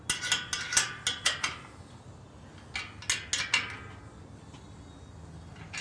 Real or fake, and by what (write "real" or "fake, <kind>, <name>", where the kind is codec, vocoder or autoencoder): real